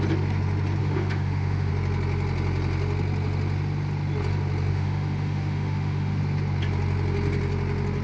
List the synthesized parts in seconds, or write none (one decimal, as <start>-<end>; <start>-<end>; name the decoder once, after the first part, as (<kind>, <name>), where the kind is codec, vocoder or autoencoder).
0.8-1.7 (autoencoder, DAC-VAE); 4.7-6.2